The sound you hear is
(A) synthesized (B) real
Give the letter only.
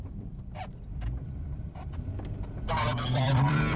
A